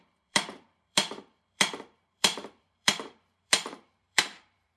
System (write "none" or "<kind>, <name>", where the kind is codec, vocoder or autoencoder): vocoder, BigVGAN v2